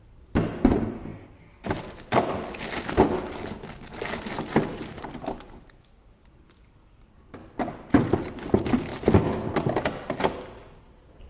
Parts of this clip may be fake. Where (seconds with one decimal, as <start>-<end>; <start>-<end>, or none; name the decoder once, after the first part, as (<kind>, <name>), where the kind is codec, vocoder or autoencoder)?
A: none